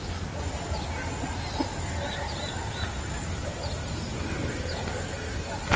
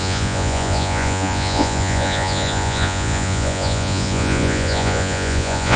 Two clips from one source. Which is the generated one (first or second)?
second